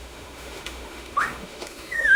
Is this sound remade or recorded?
remade